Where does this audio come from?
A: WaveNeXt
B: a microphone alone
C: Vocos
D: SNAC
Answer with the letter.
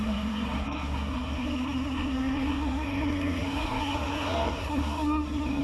D